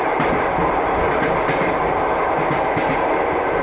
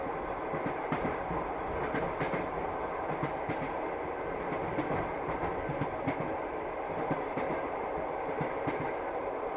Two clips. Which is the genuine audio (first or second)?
first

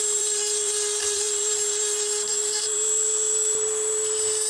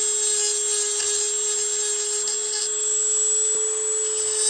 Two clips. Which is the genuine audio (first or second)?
second